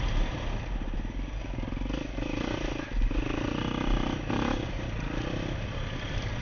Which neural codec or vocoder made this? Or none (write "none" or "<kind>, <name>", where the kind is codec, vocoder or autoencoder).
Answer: none